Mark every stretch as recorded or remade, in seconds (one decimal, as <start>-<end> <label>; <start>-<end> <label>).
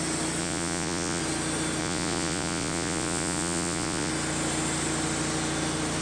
0.0-0.4 recorded; 0.4-1.2 remade; 1.2-1.8 recorded; 1.8-4.1 remade; 4.1-6.0 recorded